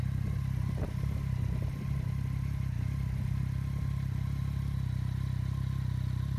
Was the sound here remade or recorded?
recorded